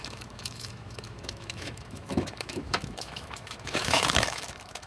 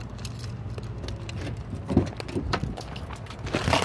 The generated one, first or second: first